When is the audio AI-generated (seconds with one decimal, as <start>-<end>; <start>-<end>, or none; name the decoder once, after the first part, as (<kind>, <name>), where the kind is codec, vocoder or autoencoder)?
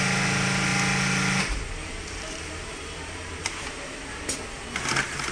1.8-4.2 (vocoder, BigVGAN v2)